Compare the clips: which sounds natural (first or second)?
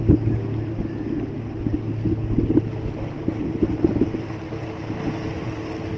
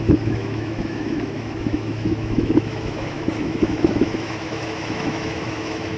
first